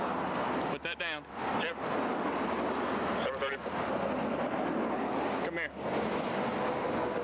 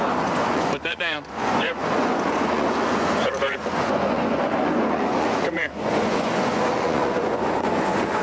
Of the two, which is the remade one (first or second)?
second